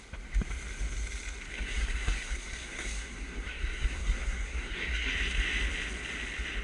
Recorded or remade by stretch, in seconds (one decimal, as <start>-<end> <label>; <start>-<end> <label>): 0.0-1.5 recorded; 1.5-5.1 remade; 5.1-6.6 recorded